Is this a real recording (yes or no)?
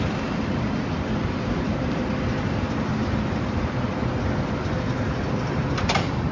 yes